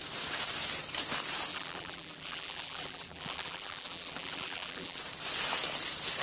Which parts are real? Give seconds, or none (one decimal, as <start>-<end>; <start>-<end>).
0.0-1.5; 5.0-6.2